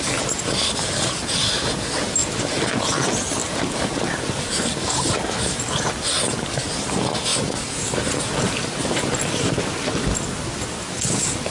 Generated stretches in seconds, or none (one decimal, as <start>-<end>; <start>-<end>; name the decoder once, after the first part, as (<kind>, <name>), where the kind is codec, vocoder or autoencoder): 2.2-2.8 (vocoder, BigVGAN v2); 3.4-4.2; 7.3-8.2